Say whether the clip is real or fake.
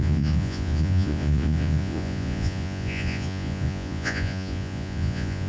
fake